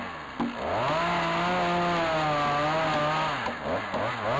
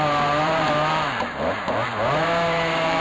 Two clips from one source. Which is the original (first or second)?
first